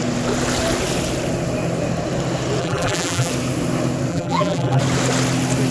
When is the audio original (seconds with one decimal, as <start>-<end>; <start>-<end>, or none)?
0.0-2.6; 3.3-4.1; 4.8-5.7